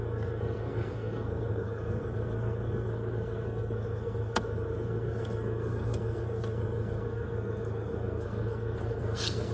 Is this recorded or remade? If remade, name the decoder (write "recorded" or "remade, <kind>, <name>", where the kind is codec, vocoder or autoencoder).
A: remade, codec, SNAC